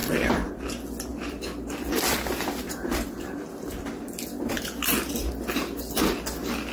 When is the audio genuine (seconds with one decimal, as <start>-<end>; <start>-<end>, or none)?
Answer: 0.5-1.1; 5.1-6.7